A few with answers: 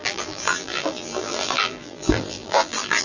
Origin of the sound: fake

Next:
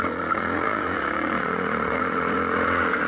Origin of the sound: fake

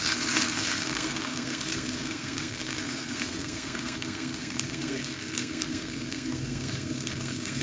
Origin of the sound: fake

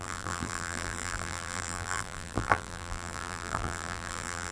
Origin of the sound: fake